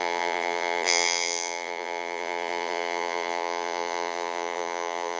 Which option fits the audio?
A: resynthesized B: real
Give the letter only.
A